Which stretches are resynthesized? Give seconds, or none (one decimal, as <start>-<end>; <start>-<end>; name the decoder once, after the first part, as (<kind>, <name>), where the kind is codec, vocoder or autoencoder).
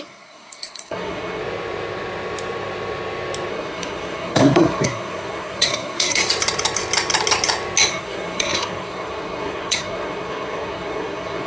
0.0-1.4 (codec, SNAC); 3.5-6.2; 7.9-11.5